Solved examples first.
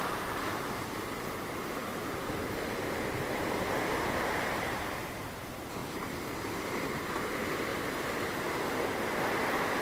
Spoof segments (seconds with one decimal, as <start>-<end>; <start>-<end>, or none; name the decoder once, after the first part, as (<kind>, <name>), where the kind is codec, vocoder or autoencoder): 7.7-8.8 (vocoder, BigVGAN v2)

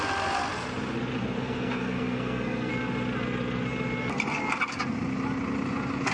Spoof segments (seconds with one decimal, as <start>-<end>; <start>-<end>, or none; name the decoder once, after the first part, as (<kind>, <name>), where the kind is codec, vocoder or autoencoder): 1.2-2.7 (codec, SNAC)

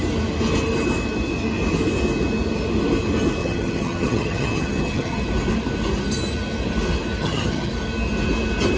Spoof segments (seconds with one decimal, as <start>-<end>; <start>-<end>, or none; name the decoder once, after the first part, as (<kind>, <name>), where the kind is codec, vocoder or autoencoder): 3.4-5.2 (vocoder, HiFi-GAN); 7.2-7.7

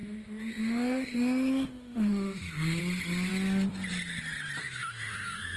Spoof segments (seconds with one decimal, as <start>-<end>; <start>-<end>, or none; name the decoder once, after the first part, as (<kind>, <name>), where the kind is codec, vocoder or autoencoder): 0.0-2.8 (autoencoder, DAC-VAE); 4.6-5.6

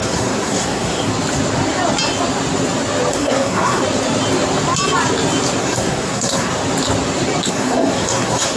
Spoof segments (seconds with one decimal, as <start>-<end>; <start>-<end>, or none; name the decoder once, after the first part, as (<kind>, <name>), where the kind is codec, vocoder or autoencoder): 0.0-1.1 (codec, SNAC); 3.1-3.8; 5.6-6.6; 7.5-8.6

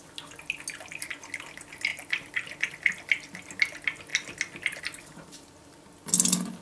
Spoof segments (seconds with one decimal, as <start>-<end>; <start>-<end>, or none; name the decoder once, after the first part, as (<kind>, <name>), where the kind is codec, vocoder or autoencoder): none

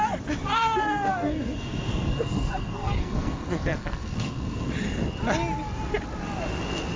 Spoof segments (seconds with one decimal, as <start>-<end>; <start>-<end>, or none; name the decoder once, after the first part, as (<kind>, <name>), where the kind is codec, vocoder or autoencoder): 0.5-4.7 (codec, SNAC)

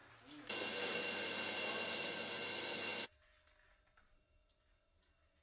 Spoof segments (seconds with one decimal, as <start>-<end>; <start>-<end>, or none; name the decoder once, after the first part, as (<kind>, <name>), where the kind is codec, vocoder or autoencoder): none